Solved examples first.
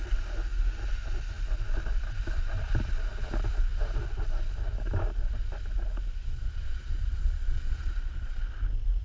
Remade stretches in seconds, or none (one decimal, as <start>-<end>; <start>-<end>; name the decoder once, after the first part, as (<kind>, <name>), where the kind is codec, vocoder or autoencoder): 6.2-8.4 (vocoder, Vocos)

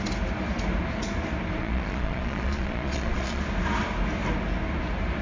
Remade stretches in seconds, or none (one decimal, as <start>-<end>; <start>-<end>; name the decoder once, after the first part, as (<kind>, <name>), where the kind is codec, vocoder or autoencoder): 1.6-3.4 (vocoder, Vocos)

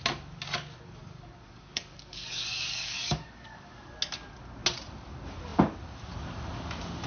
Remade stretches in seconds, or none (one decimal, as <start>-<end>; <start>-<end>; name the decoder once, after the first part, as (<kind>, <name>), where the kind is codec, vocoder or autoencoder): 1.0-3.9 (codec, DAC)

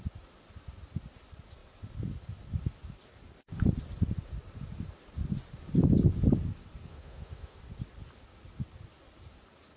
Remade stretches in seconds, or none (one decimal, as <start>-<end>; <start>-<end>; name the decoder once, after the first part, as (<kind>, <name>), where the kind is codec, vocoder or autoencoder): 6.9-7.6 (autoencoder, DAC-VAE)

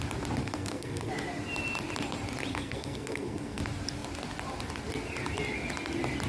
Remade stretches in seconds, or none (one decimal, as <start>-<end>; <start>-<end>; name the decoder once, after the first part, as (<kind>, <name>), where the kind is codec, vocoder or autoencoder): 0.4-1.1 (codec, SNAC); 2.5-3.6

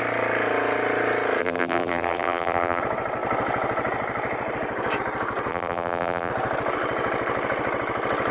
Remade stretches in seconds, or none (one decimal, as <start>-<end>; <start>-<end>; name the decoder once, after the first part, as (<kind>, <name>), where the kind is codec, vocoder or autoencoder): 1.4-2.8 (vocoder, BigVGAN v2); 5.5-6.3

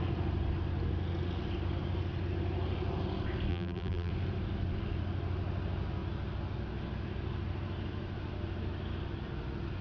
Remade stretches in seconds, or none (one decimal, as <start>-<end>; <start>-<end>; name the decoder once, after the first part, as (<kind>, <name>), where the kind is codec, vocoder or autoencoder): 3.5-4.1 (vocoder, BigVGAN v2)